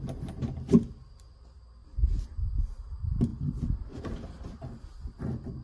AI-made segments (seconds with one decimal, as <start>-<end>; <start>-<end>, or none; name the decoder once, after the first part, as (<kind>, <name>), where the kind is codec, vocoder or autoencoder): 3.3-4.0 (vocoder, BigVGAN v2)